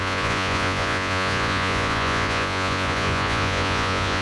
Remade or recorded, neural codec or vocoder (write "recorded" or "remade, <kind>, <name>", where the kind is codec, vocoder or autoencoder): remade, vocoder, Vocos